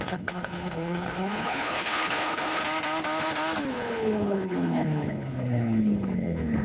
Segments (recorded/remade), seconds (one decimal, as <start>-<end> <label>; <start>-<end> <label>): 0.0-2.6 remade; 2.6-3.7 recorded; 3.7-6.6 remade